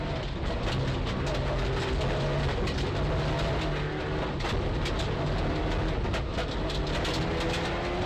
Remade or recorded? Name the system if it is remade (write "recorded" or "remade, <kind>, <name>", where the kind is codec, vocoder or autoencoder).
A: recorded